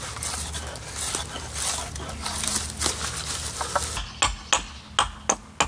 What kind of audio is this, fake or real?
real